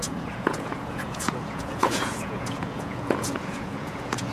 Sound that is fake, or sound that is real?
fake